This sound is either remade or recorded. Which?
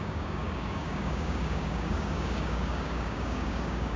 remade